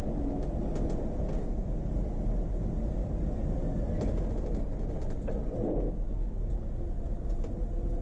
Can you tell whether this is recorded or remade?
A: recorded